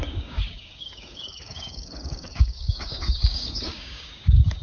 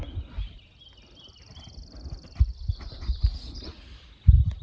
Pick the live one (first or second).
second